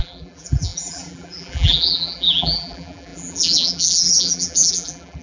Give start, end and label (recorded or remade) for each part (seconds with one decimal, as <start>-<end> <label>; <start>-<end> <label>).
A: 0.0-5.2 remade